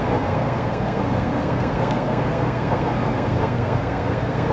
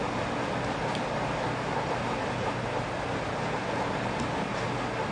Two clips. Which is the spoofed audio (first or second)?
first